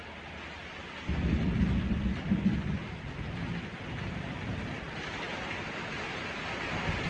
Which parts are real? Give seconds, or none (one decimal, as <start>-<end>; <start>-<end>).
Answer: 0.0-7.1